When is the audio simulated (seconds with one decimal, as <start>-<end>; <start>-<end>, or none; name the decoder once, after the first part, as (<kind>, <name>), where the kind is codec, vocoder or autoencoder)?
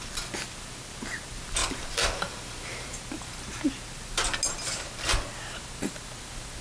1.6-3.0 (vocoder, BigVGAN v2)